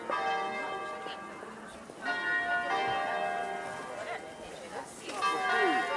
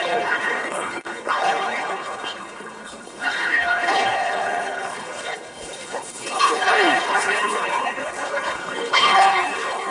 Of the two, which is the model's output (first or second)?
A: second